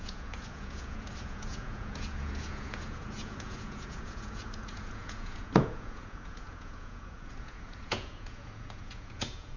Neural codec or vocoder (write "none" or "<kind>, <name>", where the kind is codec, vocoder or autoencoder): vocoder, Vocos